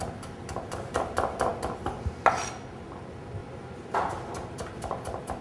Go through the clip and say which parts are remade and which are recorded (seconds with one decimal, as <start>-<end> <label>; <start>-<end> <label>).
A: 0.0-5.4 recorded